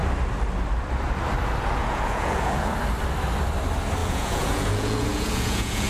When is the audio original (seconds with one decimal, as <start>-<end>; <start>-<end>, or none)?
0.0-1.8; 2.7-4.0